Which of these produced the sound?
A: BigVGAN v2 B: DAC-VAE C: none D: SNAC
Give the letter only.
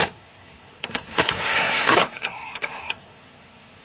D